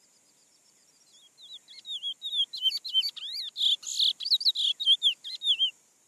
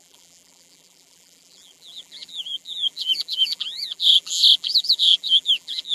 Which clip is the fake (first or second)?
second